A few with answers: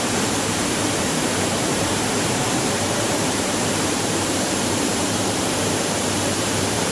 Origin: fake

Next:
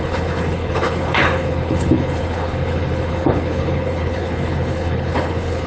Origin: fake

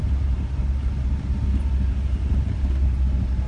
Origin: real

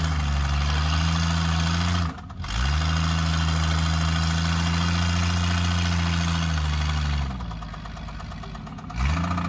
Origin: real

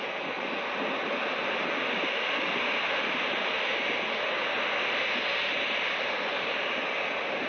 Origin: real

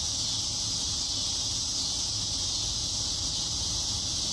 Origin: real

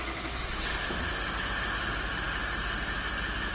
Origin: real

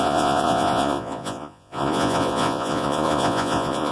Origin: fake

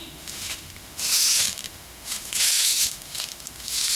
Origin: fake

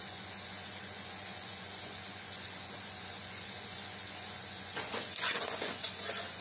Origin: fake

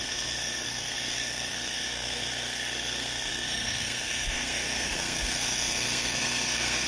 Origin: fake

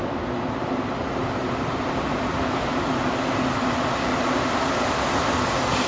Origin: real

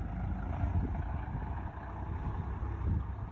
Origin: real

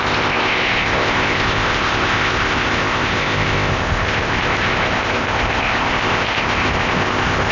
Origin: fake